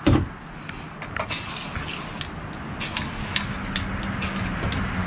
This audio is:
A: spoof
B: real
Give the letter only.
B